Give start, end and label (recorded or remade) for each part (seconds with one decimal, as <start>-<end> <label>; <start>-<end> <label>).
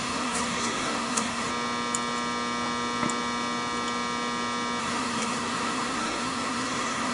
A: 0.0-1.5 remade; 1.5-4.8 recorded; 4.8-7.1 remade